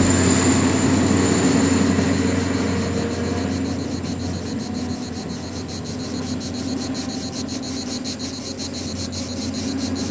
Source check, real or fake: real